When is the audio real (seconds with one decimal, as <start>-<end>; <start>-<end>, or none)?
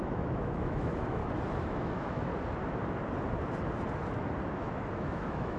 1.2-1.7; 2.3-4.5